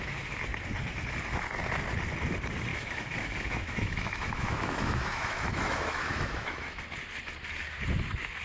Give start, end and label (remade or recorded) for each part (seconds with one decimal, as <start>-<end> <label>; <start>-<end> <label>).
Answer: 0.0-2.7 recorded; 2.7-6.8 remade; 6.8-8.4 recorded